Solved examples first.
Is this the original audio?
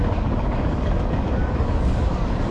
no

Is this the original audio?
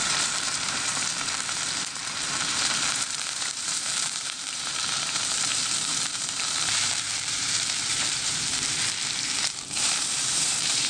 no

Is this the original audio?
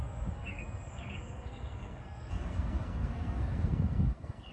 no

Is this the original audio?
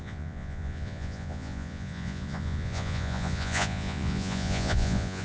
no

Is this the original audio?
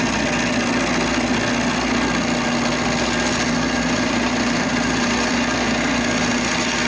yes